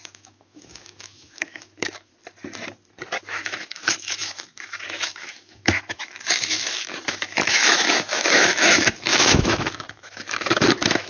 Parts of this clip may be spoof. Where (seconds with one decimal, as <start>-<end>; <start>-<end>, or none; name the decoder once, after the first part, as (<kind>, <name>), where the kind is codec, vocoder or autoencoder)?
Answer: 0.0-2.1 (autoencoder, DAC-VAE); 3.2-11.1